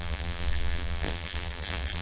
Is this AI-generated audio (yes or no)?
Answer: yes